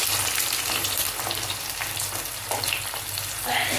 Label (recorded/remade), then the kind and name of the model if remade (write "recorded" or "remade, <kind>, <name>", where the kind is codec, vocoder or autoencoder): recorded